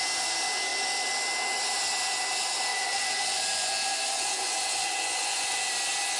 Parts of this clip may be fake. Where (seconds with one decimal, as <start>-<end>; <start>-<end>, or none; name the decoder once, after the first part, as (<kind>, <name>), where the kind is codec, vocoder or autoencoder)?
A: 2.7-5.7 (vocoder, Vocos)